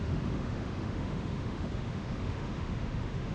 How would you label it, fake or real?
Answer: fake